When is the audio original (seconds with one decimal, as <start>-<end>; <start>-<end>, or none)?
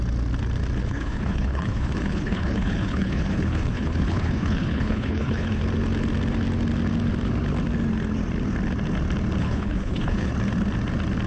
0.0-0.8; 5.6-9.4; 10.3-11.3